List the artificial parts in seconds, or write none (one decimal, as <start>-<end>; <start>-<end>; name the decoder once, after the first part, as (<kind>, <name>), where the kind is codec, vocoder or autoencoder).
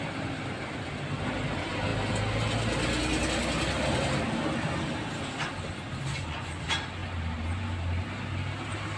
6.1-6.6 (vocoder, Vocos)